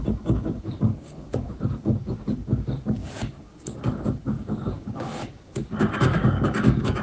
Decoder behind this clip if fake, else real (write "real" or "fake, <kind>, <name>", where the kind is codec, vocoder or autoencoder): fake, codec, DAC